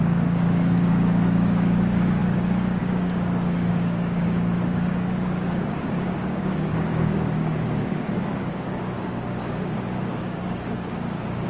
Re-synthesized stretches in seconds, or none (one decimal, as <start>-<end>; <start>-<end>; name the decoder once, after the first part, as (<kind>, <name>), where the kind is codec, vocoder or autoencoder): 0.0-11.5 (codec, DAC)